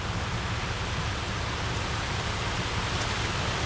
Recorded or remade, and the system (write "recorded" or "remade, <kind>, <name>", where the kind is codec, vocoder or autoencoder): recorded